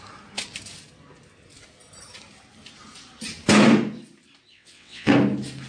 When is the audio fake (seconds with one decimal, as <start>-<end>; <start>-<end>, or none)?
4.5-5.1